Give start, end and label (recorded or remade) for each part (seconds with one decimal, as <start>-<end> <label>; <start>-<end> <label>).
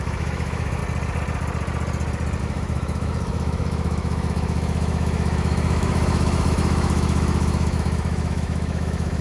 0.0-0.8 remade; 0.8-2.4 recorded; 2.4-9.2 remade